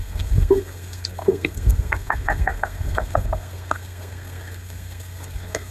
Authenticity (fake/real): fake